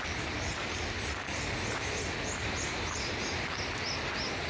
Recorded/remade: recorded